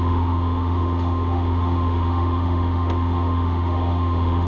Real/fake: fake